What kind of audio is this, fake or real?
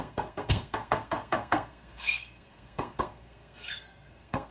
fake